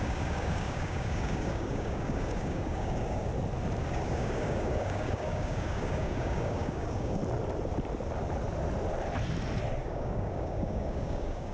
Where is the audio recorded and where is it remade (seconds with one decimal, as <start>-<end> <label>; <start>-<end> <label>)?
0.0-3.3 remade; 3.3-3.8 recorded; 3.8-7.2 remade; 7.2-9.8 recorded; 9.8-11.5 remade